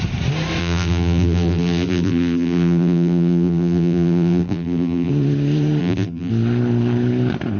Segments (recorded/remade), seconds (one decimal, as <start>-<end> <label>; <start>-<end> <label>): 0.0-0.6 recorded; 0.6-5.1 remade; 5.1-5.8 recorded; 5.8-6.3 remade; 6.3-7.6 recorded